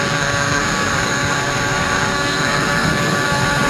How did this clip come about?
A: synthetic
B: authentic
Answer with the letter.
A